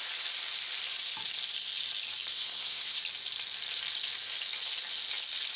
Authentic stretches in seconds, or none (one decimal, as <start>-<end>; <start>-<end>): 0.0-2.3; 3.0-5.6